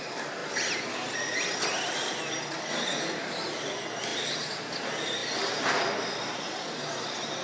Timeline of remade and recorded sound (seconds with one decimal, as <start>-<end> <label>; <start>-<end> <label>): 0.0-1.7 recorded; 1.7-3.5 remade; 3.5-4.1 recorded; 4.1-4.7 remade; 4.7-7.4 recorded